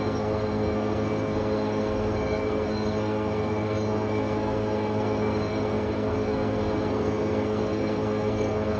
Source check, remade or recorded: remade